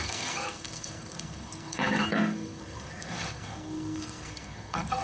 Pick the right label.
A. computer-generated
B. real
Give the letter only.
A